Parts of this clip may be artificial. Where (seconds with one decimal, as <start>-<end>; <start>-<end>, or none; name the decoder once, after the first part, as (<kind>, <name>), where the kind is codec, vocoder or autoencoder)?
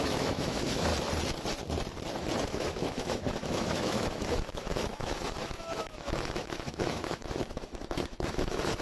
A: 0.0-0.9 (autoencoder, DAC-VAE); 2.5-8.8